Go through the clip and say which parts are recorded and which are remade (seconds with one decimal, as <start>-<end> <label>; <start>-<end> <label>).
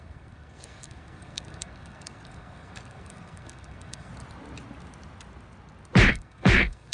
0.0-4.1 remade; 4.1-6.1 recorded; 6.1-6.9 remade